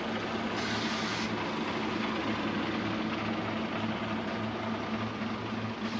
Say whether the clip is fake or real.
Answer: real